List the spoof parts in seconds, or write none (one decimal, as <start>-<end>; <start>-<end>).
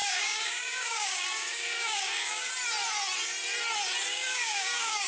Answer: 0.0-2.5; 4.1-5.1